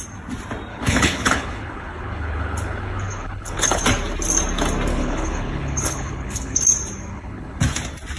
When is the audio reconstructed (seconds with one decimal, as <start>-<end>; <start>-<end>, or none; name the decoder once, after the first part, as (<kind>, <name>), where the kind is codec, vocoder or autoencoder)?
0.7-3.8 (codec, HILCodec); 4.9-6.6; 7.1-7.6